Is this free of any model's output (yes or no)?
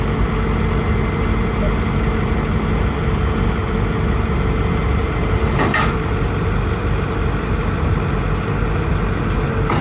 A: yes